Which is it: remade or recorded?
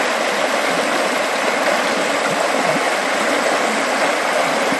recorded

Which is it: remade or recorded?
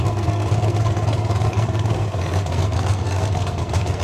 remade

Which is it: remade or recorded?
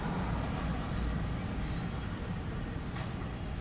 recorded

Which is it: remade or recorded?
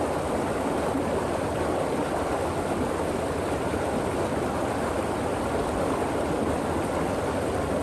recorded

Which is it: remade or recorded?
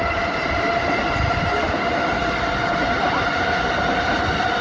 recorded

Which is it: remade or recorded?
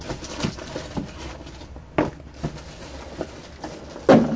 recorded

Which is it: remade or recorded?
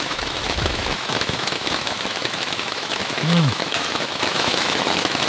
remade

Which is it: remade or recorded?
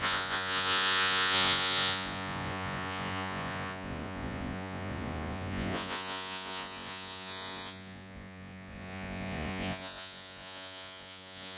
remade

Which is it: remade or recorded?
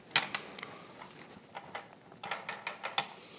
recorded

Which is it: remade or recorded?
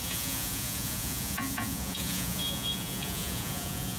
remade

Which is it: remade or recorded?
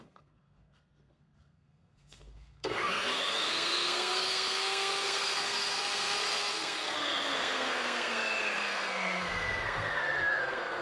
remade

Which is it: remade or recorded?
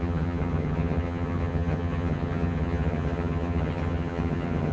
remade